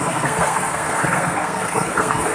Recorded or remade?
remade